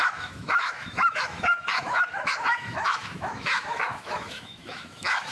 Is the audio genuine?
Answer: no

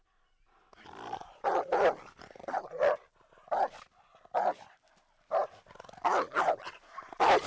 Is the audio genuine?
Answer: yes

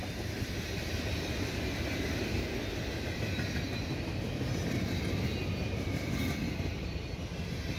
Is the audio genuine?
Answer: yes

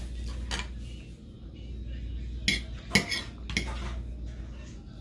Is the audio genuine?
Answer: yes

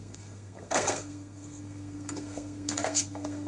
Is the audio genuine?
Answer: no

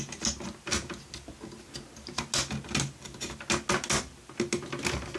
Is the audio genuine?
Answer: yes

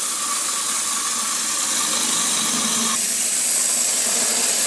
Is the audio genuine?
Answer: yes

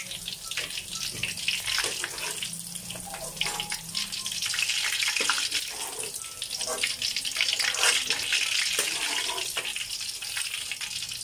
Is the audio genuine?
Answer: yes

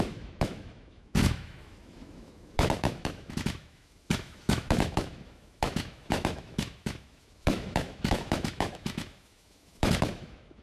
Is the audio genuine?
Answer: no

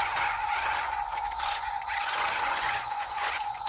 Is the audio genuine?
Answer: no